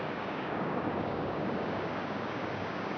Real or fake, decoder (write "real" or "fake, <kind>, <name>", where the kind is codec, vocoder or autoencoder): fake, codec, DAC